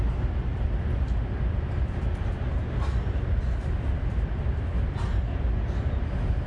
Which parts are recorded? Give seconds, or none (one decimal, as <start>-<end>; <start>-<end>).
none